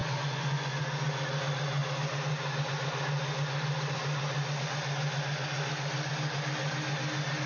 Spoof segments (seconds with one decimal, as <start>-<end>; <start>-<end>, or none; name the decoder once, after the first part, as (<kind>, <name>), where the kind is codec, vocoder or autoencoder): 0.0-0.8 (vocoder, Vocos)

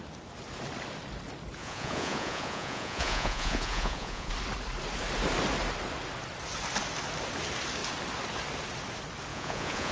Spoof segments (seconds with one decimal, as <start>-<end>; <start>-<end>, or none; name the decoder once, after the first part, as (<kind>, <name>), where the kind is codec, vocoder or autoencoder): 1.6-4.3 (vocoder, Vocos); 9.3-9.9